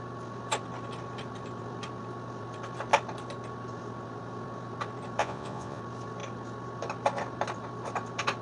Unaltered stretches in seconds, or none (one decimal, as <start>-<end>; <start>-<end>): 0.0-5.2; 5.8-8.4